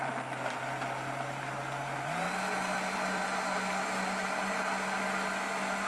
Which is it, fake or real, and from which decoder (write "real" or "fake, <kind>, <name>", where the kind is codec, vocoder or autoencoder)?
real